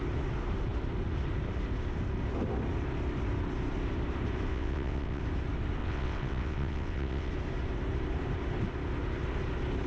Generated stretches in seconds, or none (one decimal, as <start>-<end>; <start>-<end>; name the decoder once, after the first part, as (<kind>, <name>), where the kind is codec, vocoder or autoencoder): 4.5-5.2 (vocoder, WaveNeXt); 5.8-7.3